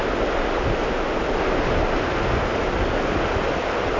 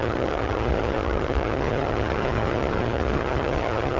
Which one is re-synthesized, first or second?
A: second